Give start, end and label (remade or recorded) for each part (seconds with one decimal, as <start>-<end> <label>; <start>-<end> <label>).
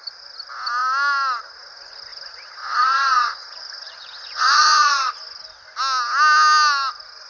0.0-2.1 recorded; 2.1-5.1 remade; 5.1-7.3 recorded